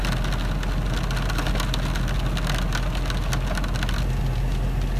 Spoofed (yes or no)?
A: no